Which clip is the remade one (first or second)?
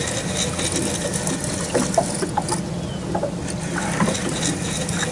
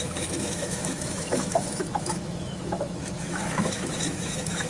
second